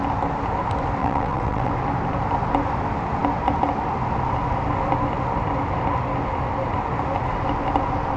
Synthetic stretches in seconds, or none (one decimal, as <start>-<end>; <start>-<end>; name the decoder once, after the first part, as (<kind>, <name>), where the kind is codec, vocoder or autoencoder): 1.0-1.7 (vocoder, WaveNeXt)